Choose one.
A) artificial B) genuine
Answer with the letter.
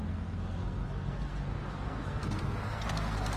A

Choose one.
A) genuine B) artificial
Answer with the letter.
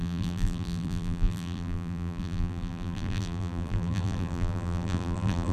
B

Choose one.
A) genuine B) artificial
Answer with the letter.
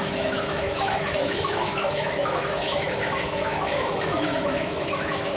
B